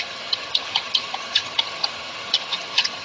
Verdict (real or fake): fake